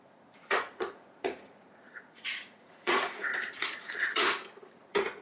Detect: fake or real fake